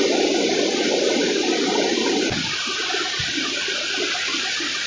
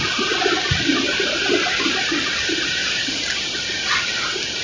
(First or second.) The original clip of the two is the second